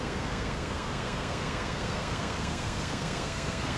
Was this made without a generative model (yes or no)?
no